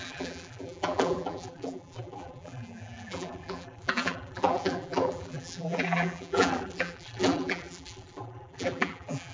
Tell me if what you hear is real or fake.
fake